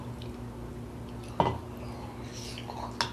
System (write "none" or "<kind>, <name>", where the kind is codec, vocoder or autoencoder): none